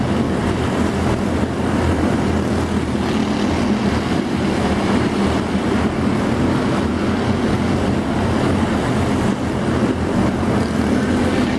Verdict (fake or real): real